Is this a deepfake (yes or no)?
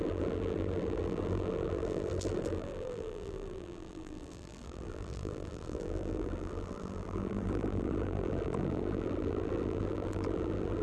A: yes